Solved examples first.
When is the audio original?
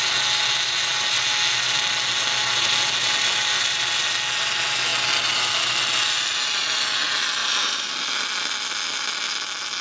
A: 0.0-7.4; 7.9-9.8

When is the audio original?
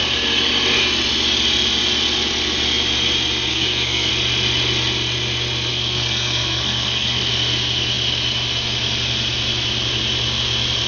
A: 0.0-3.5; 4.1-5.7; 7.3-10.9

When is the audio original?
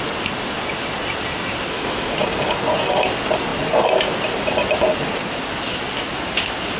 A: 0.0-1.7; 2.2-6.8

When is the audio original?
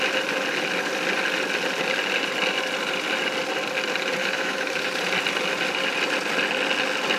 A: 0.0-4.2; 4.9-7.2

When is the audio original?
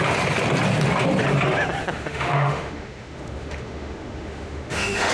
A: 0.0-1.8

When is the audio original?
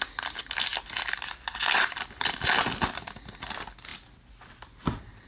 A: 0.0-5.3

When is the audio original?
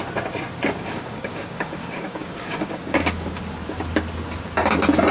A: 0.0-0.8; 3.4-5.1